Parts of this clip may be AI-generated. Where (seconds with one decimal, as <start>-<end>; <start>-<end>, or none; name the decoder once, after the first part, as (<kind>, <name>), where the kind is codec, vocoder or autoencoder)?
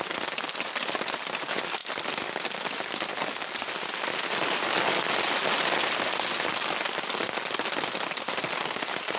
none